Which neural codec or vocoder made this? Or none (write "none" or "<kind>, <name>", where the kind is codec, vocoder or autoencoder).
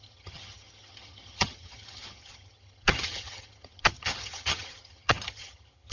vocoder, HiFi-GAN